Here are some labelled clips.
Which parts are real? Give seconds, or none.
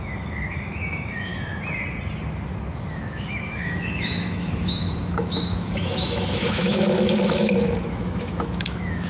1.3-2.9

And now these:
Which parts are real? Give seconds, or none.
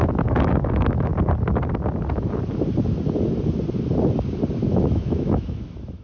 1.1-4.7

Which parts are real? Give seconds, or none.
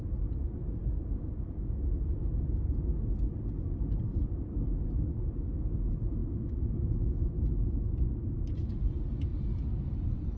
0.0-6.2; 7.3-10.4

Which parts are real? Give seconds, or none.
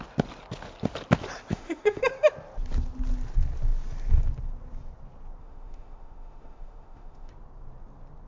0.0-1.5; 2.0-5.4; 7.3-8.3